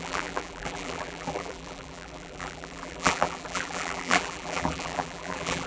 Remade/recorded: remade